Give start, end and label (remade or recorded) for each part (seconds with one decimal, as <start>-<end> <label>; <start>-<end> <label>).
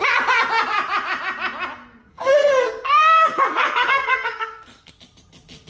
0.0-2.0 recorded; 2.0-4.9 remade; 4.9-5.7 recorded